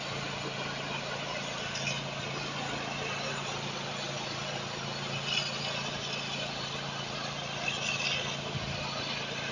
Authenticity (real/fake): real